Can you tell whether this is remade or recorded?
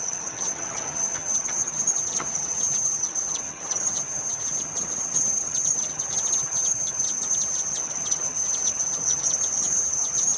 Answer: remade